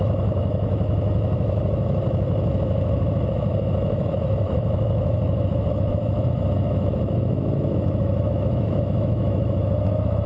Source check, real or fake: fake